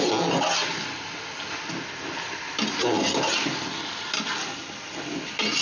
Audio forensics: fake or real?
real